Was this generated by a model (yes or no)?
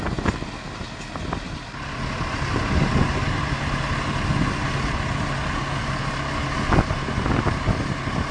no